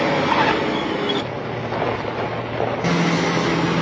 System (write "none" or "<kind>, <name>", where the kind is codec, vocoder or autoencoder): none